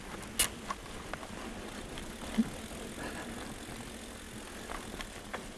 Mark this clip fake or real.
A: real